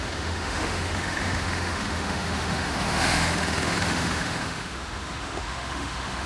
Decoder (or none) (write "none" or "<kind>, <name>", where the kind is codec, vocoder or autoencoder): autoencoder, DAC-VAE